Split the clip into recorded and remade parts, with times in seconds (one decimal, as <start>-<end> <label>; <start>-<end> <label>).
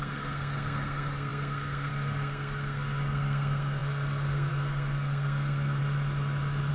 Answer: 0.0-5.8 remade; 5.8-6.7 recorded